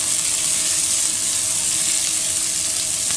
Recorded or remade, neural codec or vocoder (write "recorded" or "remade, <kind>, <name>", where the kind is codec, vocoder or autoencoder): recorded